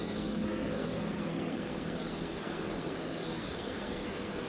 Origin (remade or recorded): remade